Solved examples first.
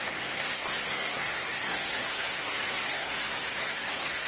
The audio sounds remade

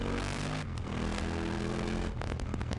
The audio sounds remade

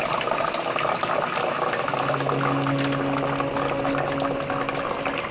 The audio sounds recorded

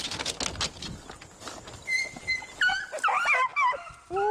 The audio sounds recorded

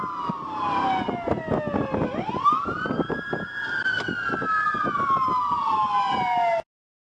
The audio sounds recorded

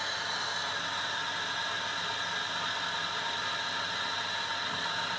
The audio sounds recorded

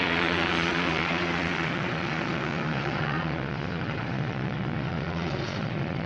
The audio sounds remade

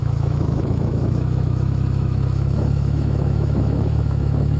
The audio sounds remade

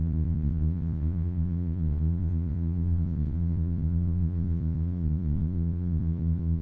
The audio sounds remade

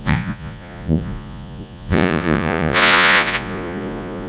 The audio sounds remade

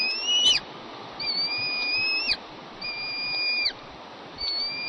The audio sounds recorded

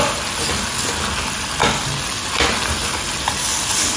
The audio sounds recorded